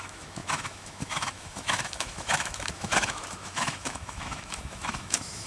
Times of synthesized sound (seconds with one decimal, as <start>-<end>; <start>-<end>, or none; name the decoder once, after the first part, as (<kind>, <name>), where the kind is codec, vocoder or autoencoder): 0.0-5.5 (autoencoder, DAC-VAE)